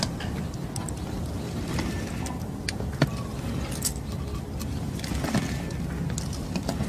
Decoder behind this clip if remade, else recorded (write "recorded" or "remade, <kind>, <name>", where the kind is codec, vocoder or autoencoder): recorded